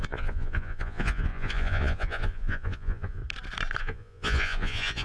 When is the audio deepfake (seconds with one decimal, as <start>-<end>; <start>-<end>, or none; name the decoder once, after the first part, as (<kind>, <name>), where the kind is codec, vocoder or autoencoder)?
0.0-3.2 (vocoder, Vocos); 3.8-5.0